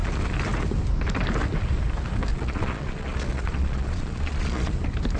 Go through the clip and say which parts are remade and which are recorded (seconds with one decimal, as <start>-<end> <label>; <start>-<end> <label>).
0.0-2.3 recorded; 2.3-4.7 remade; 4.7-5.2 recorded